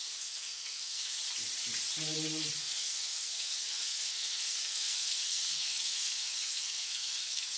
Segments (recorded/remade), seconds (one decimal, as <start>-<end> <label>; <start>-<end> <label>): 0.0-1.2 remade; 1.2-2.6 recorded; 2.6-7.6 remade